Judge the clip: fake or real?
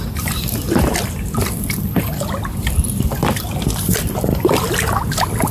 real